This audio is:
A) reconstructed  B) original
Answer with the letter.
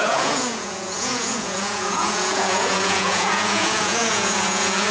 A